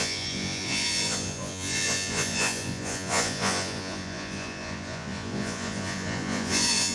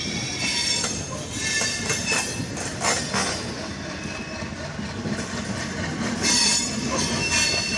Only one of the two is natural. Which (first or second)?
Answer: second